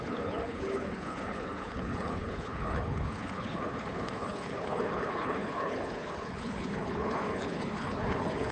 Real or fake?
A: fake